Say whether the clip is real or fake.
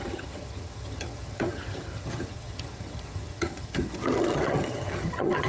fake